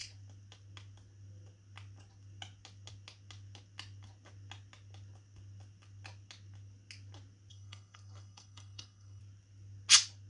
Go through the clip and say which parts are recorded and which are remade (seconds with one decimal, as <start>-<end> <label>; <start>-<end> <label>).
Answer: 0.0-7.5 recorded; 7.5-9.2 remade; 9.2-10.3 recorded